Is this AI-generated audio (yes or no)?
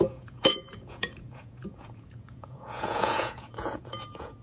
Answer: yes